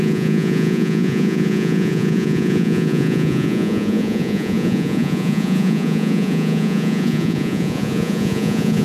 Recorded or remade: remade